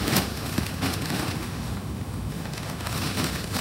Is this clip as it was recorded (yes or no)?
no